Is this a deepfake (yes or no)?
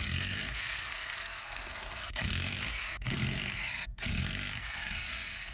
yes